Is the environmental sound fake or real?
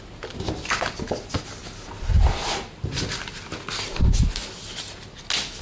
real